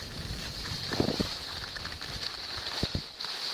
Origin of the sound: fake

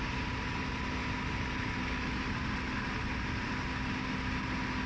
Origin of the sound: real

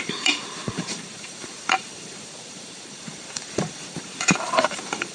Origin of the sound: fake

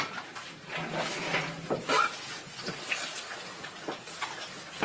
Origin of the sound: real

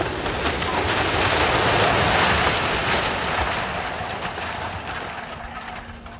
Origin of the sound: real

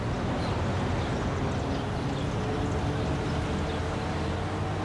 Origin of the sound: real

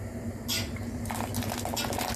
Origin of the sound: real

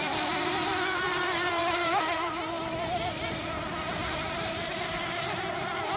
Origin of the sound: fake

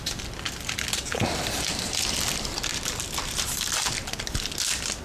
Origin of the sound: real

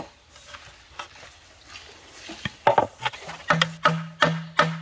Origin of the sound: real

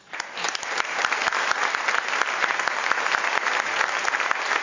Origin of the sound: fake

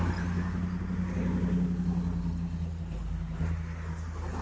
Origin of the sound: real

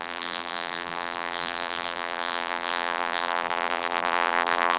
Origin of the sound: fake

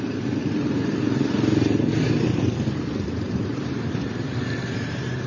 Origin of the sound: fake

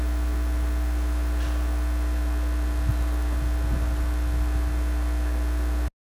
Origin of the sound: real